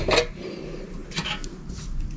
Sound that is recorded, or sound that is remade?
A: recorded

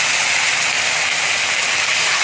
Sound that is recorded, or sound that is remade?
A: recorded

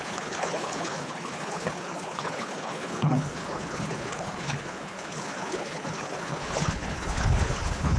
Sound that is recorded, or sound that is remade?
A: remade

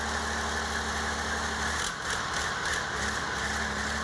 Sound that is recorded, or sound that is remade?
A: recorded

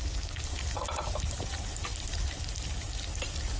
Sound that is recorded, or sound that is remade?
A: recorded